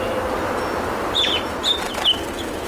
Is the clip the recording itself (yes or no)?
yes